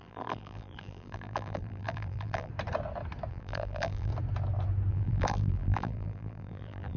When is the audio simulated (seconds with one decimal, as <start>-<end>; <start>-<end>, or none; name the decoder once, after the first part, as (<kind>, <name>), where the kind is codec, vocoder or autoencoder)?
0.0-2.5 (vocoder, BigVGAN v2); 3.3-4.1; 4.9-7.0